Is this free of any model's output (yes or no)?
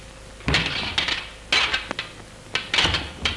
yes